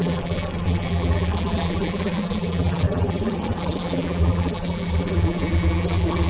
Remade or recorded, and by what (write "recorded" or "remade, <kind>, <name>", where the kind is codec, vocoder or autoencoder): remade, vocoder, BigVGAN v2